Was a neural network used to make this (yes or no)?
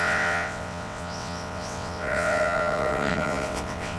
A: yes